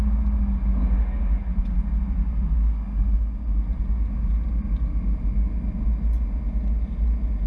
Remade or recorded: recorded